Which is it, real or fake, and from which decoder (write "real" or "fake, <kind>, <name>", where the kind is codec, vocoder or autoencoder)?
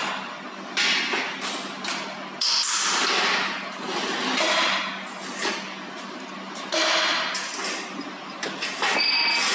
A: real